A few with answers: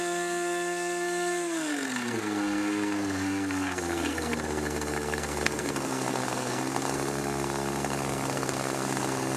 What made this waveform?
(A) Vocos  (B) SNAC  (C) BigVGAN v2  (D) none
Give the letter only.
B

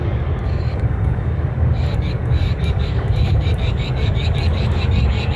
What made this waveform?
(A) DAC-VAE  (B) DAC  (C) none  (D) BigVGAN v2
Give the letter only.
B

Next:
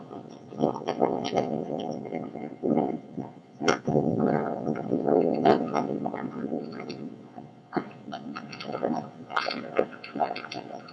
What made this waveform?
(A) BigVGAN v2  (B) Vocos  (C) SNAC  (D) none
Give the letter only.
B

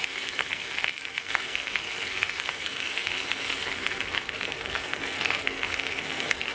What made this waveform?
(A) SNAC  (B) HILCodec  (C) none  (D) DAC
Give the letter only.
A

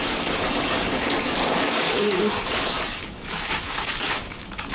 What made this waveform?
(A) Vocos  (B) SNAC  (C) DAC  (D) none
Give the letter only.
C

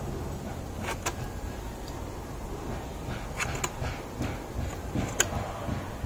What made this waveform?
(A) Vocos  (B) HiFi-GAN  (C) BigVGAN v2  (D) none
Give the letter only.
D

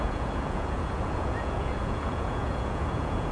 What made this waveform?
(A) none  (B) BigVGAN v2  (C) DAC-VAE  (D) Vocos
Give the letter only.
D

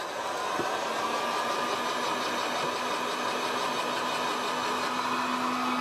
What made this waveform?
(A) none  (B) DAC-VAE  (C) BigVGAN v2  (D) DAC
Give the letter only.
A